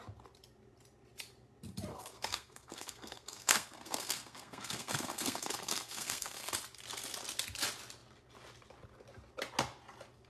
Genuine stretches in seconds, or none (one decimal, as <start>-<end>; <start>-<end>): 0.0-1.9; 6.5-10.3